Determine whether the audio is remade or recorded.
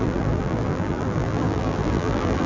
remade